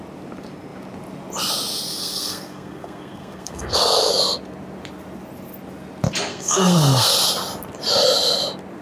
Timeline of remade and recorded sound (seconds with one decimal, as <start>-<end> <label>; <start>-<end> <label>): 0.0-1.9 recorded; 1.9-4.1 remade; 4.1-6.3 recorded; 6.3-7.1 remade; 7.1-8.8 recorded